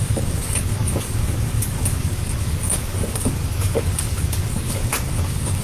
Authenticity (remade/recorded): remade